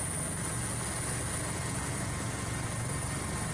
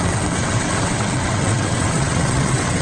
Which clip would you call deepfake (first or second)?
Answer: second